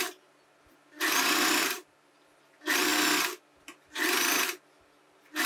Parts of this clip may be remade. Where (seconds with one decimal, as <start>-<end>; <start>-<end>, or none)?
1.6-2.1